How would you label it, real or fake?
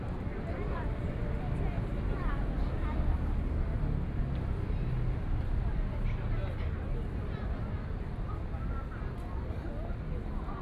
real